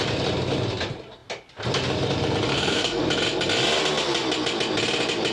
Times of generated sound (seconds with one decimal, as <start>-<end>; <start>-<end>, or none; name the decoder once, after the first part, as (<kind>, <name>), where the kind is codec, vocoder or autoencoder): 2.5-3.0 (codec, SNAC)